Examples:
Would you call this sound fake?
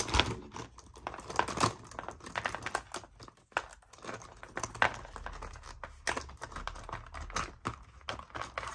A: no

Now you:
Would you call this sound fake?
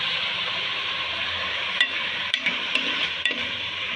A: yes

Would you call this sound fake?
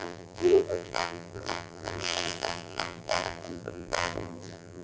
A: yes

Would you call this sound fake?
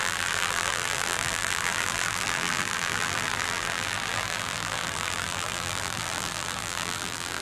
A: yes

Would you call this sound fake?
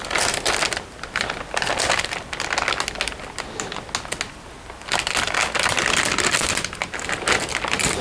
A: no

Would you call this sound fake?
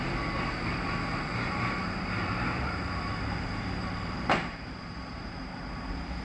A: yes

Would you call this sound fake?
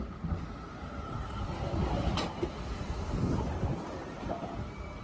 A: no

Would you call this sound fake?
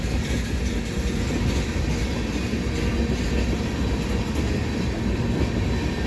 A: no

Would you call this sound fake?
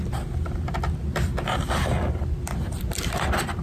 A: yes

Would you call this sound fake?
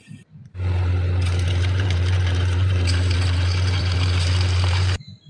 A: yes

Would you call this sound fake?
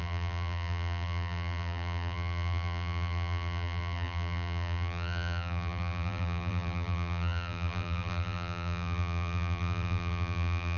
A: yes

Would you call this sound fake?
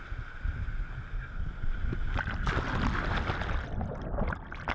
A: no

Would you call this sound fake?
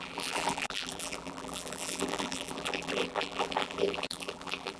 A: yes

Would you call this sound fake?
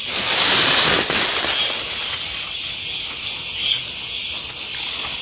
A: no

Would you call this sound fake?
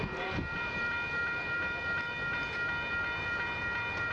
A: yes